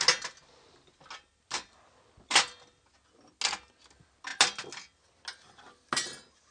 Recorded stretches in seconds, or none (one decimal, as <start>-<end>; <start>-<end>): 0.0-6.5